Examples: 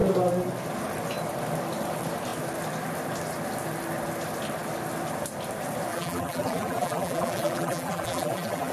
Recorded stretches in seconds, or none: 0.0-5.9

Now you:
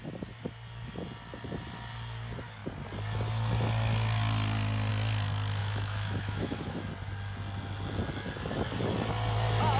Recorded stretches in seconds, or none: 0.0-5.6; 6.9-9.8

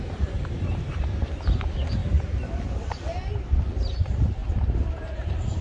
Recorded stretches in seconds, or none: 2.0-3.9; 4.4-5.0